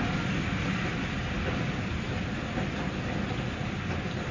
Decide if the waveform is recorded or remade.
recorded